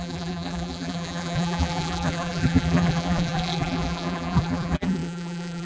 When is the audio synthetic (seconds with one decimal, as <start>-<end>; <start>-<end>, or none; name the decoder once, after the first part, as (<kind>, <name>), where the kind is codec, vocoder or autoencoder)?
0.0-5.7 (vocoder, BigVGAN v2)